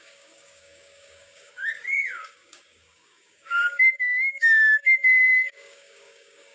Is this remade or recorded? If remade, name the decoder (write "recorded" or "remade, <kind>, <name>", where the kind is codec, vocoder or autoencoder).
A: remade, codec, DAC